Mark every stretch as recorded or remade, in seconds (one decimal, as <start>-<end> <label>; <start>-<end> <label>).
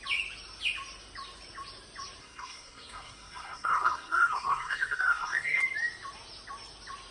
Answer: 0.0-2.2 recorded; 2.2-5.6 remade; 5.6-7.1 recorded